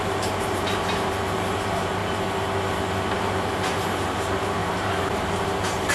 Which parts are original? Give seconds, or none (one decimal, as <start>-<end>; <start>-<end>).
2.0-3.3